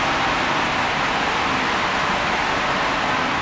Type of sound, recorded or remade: recorded